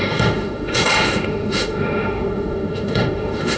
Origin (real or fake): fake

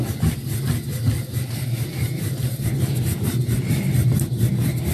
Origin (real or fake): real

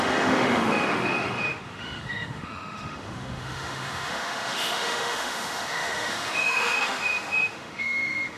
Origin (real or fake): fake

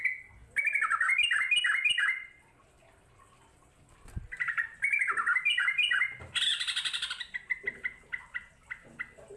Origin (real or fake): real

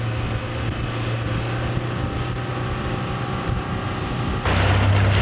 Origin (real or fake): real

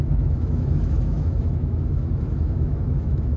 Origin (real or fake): fake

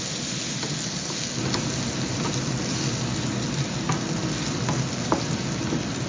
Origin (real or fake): real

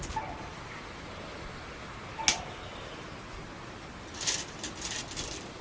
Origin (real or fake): real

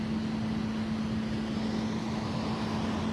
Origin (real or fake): real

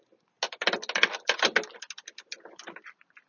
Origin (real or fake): real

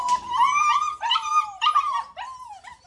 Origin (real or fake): real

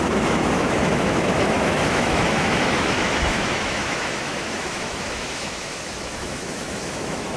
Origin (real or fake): fake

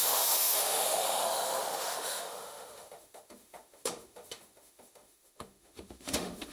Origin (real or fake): fake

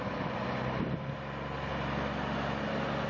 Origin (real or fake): real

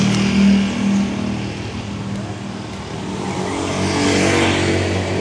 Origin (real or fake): real